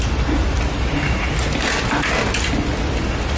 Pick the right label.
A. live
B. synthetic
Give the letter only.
A